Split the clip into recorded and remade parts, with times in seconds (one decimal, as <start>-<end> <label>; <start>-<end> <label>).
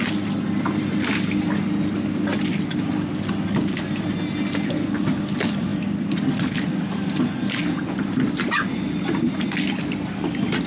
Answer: 0.0-10.7 recorded